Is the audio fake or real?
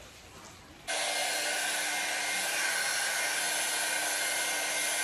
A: real